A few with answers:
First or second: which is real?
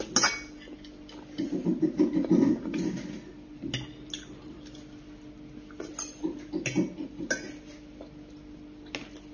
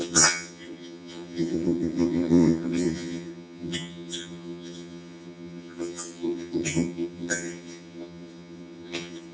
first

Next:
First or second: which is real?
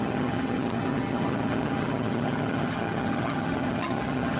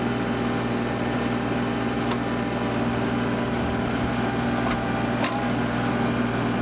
second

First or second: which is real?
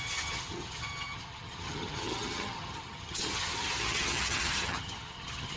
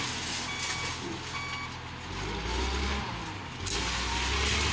second